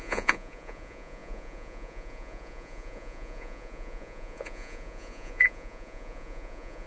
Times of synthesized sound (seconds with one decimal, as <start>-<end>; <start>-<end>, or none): 0.0-6.9